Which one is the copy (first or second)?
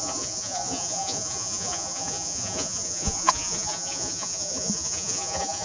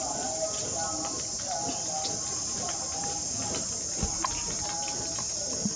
first